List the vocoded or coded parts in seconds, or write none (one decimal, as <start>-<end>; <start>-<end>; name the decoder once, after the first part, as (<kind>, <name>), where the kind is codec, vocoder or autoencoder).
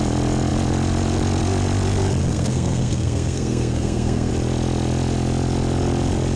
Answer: 2.2-4.3 (codec, SNAC)